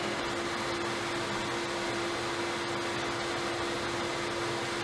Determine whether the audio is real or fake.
real